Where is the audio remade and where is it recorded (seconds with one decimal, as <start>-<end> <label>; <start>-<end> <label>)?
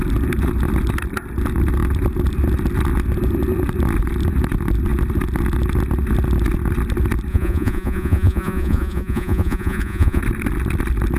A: 0.0-7.3 recorded; 7.3-10.2 remade; 10.2-11.2 recorded